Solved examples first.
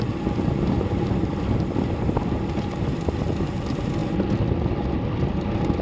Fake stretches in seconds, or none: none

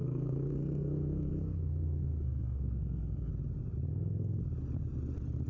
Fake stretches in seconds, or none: 0.0-3.3 (codec, SNAC); 3.9-4.4

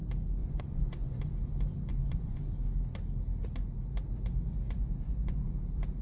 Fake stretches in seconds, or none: 0.4-1.2 (vocoder, Vocos); 1.9-2.4; 4.8-5.5

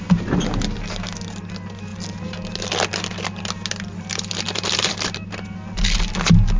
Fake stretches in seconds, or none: none

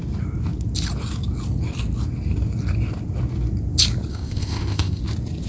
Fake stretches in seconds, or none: 4.1-5.0 (codec, ZipCodec)

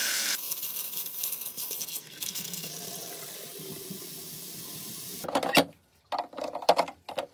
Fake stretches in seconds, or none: 0.0-2.7 (codec, SNAC)